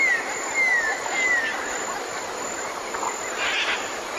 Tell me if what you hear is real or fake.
real